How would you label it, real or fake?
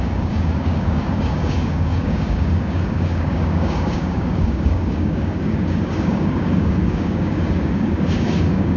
fake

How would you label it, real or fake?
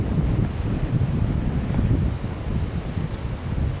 real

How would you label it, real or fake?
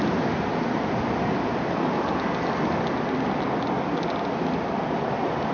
real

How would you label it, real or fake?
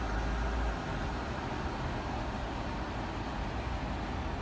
real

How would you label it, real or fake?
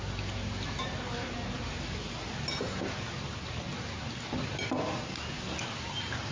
real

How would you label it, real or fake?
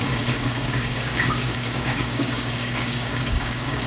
fake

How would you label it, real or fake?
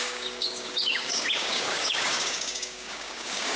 fake